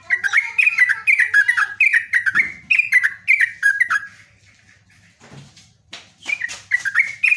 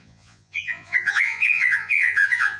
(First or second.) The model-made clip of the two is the second